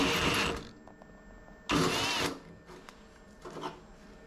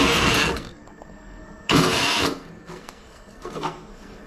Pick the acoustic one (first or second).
first